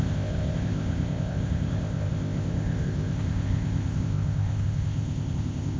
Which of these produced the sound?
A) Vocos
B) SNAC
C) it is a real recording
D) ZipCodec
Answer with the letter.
D